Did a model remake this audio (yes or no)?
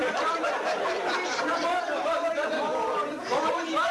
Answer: no